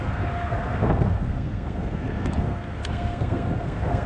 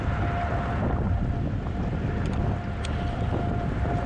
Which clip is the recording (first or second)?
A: second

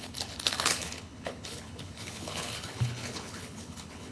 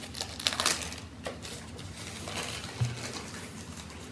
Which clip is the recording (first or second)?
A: second